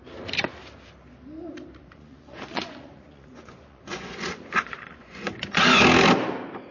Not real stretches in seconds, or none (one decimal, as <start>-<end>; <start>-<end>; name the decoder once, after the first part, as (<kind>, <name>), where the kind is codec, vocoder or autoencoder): 1.8-5.8 (vocoder, Vocos)